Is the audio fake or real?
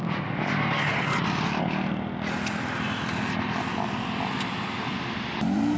real